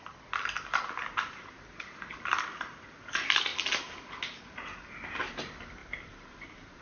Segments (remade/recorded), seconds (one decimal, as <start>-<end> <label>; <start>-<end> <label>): 0.0-1.0 recorded; 1.0-2.7 remade; 2.7-5.8 recorded; 5.8-6.8 remade

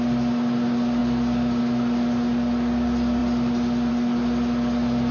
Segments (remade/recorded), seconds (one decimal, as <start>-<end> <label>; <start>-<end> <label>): 0.0-5.1 recorded

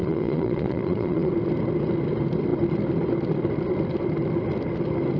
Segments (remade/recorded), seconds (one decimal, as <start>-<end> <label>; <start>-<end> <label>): 0.0-1.3 remade; 1.3-5.2 recorded

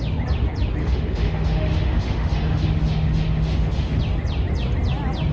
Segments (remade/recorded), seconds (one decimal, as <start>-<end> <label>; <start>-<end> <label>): 0.0-0.8 recorded; 0.8-4.0 remade; 4.0-5.3 recorded

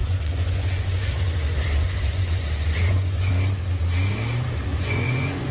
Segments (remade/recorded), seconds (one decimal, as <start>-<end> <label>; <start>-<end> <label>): 0.0-3.3 remade; 3.3-4.7 recorded; 4.7-5.5 remade

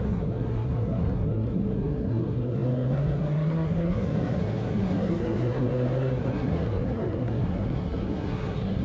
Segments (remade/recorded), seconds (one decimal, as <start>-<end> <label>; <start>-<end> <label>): 0.0-8.8 remade

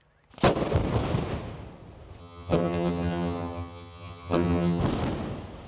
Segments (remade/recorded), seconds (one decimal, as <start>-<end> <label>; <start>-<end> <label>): 0.0-2.2 recorded; 2.2-4.8 remade; 4.8-5.7 recorded